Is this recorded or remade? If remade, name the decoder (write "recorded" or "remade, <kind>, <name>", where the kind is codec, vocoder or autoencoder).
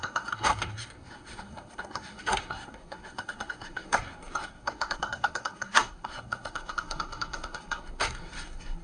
remade, codec, SNAC